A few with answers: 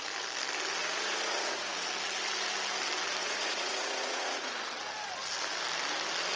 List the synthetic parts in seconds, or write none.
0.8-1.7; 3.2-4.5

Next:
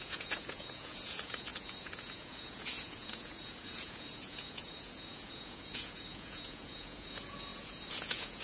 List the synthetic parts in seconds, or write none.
0.0-8.4

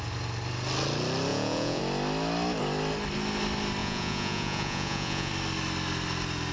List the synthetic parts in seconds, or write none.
1.3-1.8; 3.8-5.3

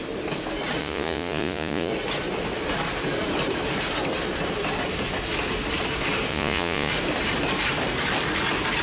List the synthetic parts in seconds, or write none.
0.8-1.9; 6.3-6.9

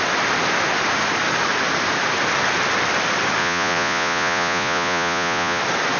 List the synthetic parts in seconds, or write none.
3.4-5.6